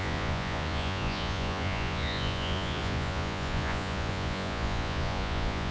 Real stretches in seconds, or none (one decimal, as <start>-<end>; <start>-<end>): none